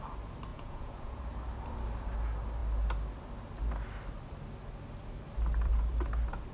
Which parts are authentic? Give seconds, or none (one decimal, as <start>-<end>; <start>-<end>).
0.0-0.5; 1.2-6.5